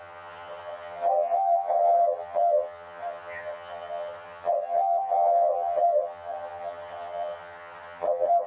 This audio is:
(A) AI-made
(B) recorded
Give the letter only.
A